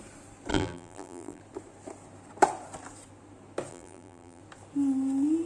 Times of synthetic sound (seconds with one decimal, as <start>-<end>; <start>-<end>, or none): 0.5-1.4; 3.7-4.4